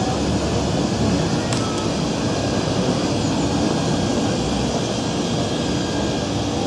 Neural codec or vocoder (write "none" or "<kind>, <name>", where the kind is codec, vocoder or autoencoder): none